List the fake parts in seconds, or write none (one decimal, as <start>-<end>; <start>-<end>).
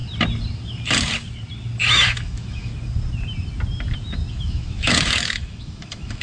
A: 1.9-2.7; 4.3-6.2